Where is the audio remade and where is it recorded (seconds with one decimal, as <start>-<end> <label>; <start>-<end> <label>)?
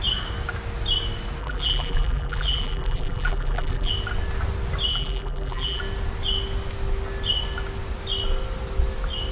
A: 0.0-1.4 recorded; 1.4-3.9 remade; 3.9-4.9 recorded; 4.9-5.8 remade; 5.8-9.3 recorded